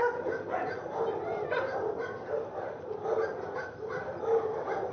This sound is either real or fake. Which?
fake